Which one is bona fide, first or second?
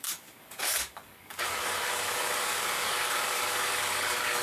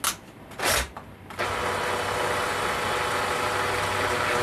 second